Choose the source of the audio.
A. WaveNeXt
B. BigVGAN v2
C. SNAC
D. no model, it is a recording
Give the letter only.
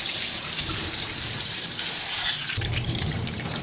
B